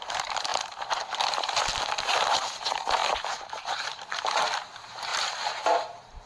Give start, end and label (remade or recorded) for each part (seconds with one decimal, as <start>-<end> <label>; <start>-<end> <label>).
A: 0.0-6.3 remade